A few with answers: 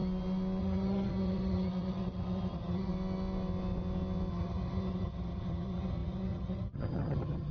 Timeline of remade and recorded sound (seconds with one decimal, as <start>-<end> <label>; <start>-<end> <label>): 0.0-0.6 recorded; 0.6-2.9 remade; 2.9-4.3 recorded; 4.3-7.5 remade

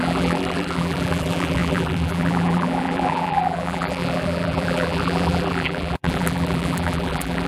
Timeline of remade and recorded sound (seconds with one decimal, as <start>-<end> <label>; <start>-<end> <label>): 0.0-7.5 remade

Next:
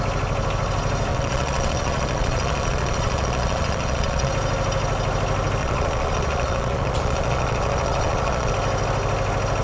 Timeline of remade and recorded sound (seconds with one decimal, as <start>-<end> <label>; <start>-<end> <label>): 0.0-1.1 recorded; 1.1-4.3 remade; 4.3-5.6 recorded; 5.6-8.5 remade; 8.5-9.6 recorded

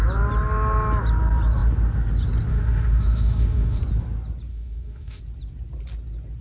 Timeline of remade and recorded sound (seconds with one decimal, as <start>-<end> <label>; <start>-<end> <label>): 0.0-2.5 recorded; 2.5-3.8 remade; 3.8-4.5 recorded; 4.5-5.2 remade; 5.2-6.4 recorded

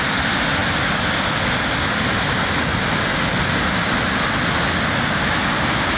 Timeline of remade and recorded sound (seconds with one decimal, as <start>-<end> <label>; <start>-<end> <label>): 0.0-6.0 recorded

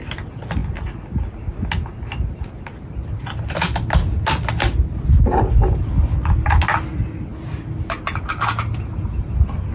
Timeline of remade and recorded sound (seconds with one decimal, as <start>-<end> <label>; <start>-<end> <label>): 0.0-9.7 recorded

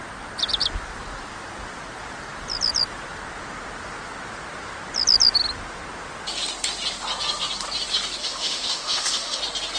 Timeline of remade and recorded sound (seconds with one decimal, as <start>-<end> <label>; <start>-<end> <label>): 0.0-8.2 recorded; 8.2-9.4 remade; 9.4-9.8 recorded